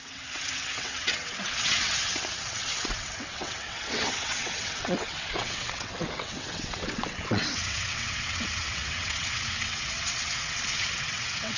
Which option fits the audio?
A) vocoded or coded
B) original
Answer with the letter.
A